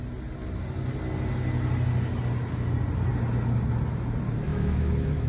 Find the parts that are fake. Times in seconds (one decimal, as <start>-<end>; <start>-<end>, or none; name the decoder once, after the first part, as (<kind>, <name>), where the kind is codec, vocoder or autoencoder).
4.5-5.3 (autoencoder, DAC-VAE)